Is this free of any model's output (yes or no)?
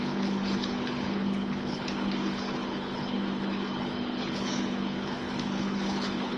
no